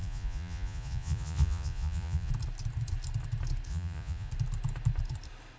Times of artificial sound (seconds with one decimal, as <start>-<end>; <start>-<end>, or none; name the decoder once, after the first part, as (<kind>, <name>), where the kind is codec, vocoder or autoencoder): 0.0-2.3 (vocoder, Vocos); 3.7-4.3